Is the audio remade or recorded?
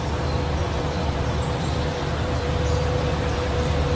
remade